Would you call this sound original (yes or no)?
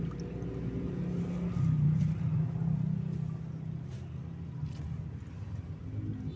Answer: yes